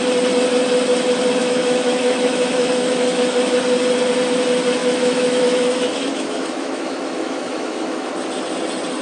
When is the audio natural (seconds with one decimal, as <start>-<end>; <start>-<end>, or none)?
0.0-1.4; 3.6-4.8; 8.1-9.0